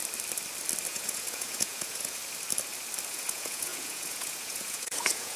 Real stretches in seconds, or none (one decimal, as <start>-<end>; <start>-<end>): 0.0-0.9; 2.2-3.1